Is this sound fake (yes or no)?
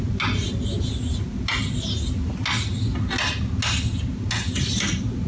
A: no